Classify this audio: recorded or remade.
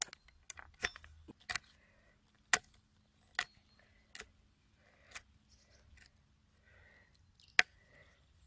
recorded